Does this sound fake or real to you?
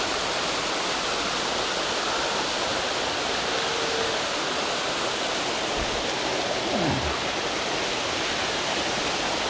real